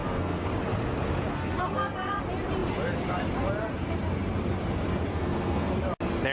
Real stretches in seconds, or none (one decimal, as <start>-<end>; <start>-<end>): 0.5-1.3; 2.2-5.1; 5.7-6.3